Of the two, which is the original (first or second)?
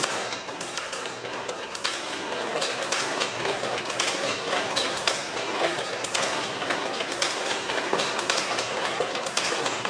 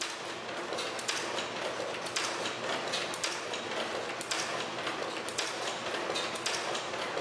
second